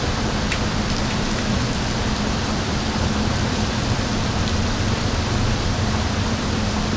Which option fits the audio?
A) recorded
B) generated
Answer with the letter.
B